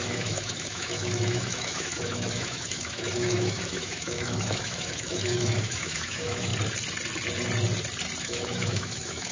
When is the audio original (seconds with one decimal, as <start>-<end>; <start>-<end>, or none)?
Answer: 6.5-8.2